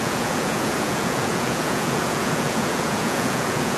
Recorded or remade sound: remade